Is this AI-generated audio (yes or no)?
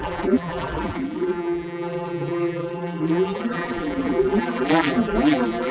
yes